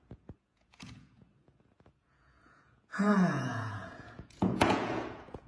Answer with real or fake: fake